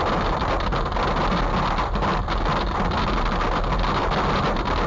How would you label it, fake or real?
real